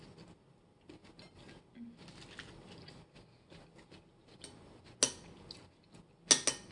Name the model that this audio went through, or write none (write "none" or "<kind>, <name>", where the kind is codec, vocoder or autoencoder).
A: none